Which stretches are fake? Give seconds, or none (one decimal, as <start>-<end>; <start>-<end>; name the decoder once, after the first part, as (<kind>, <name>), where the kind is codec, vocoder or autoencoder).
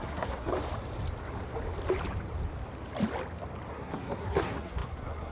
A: 0.0-0.5 (codec, SNAC); 3.7-5.3